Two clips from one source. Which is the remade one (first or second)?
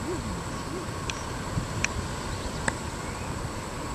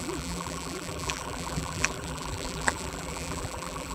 second